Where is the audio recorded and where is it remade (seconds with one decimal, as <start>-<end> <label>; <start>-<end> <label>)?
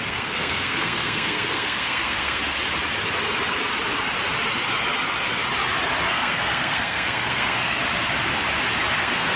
0.0-2.4 remade; 2.4-6.1 recorded; 6.1-7.8 remade; 7.8-9.0 recorded; 9.0-9.4 remade